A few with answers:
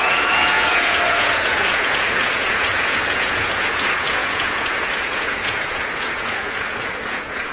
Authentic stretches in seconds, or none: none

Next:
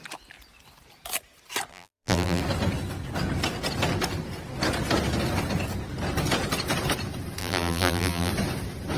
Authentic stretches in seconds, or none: 0.0-1.7; 2.4-7.4; 8.3-9.0

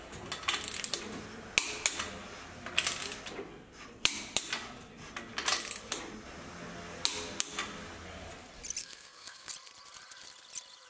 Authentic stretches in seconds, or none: 0.0-8.8; 9.5-10.9

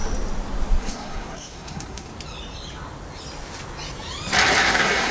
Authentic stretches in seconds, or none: 0.0-0.8; 2.1-4.6

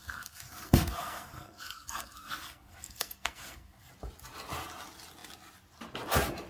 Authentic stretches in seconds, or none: 3.9-6.5

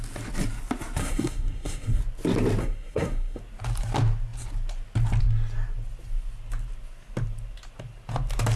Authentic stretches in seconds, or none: 0.0-1.0; 2.0-2.6; 3.4-8.6

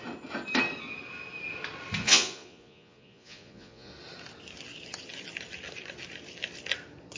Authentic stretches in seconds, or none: 0.0-2.0; 3.9-7.2